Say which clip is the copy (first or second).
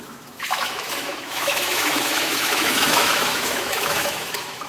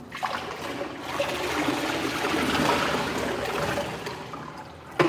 first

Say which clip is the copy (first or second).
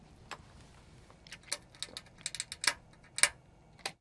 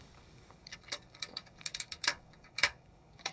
second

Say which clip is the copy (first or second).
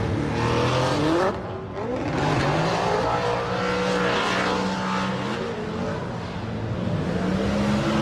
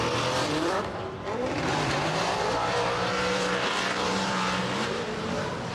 second